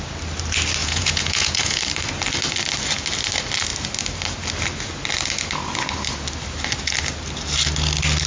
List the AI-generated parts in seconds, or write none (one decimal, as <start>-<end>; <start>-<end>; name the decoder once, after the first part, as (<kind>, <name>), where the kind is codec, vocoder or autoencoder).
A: 0.8-1.8 (vocoder, Vocos)